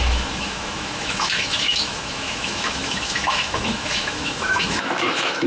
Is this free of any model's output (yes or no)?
no